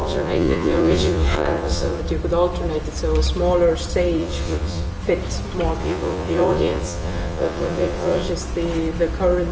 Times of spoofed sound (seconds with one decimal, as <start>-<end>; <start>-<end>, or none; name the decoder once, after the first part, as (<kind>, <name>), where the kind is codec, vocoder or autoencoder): 0.0-2.0 (vocoder, Vocos); 4.2-4.9; 5.8-8.3